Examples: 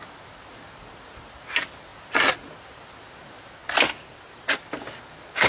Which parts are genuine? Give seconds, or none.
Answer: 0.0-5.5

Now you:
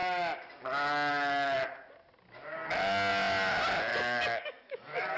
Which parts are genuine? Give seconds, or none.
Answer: 0.0-3.9

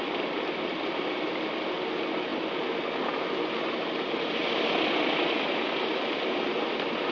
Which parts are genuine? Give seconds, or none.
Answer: 0.0-7.1

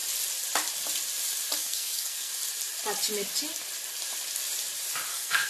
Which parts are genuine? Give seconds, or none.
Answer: 0.0-1.6; 2.3-5.1

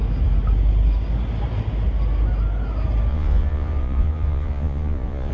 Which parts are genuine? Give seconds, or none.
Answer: 0.0-3.1

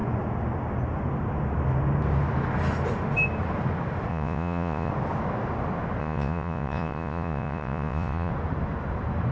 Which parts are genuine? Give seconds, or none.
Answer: 0.0-4.1; 4.9-6.0; 8.3-9.3